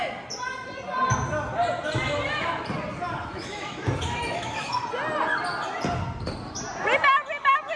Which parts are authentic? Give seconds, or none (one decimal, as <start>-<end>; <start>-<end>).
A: 0.0-3.2; 4.8-7.8

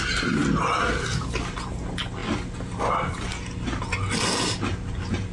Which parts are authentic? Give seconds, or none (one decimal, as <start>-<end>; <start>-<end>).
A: 0.0-5.3

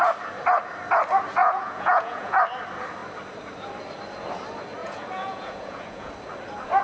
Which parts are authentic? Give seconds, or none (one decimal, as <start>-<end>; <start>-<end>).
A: 0.0-1.4; 2.4-4.8; 6.1-6.8

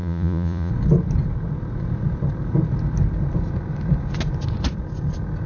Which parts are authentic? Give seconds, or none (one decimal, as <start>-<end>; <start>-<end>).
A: 0.7-5.5

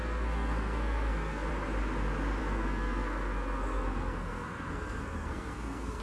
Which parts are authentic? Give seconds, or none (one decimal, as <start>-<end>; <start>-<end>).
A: 1.5-2.4

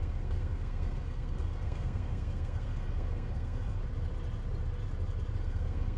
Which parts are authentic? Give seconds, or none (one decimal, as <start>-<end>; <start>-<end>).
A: 3.8-5.4

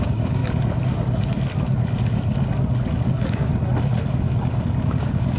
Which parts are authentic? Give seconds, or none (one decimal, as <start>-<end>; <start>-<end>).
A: 0.4-3.1; 3.5-4.8

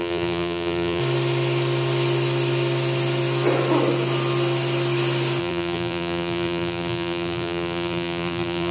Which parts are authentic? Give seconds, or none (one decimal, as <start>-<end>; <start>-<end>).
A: 1.0-5.4